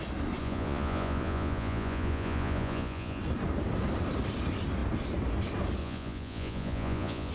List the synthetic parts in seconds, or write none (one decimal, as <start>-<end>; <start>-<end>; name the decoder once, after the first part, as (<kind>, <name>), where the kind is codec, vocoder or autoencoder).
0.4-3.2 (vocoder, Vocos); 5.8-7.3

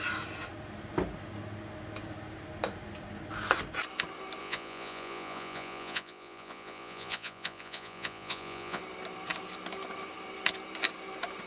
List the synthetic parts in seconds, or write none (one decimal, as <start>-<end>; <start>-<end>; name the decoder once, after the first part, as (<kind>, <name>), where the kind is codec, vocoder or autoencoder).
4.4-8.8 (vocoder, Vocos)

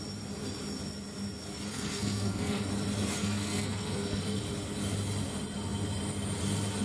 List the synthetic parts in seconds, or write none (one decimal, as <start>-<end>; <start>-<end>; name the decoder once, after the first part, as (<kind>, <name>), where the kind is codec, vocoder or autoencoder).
1.7-2.7 (codec, SNAC); 3.2-4.4

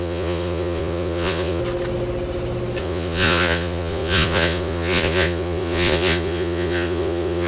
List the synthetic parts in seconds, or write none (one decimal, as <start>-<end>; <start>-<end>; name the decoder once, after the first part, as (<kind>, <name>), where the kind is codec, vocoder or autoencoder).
0.0-1.6 (vocoder, Vocos); 2.8-7.5

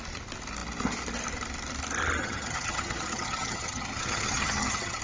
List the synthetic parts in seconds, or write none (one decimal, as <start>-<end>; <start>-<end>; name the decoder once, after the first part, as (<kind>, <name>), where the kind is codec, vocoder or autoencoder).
2.2-5.0 (vocoder, HiFi-GAN)